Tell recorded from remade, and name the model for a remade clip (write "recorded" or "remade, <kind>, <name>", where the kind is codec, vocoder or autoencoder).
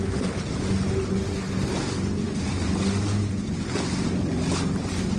recorded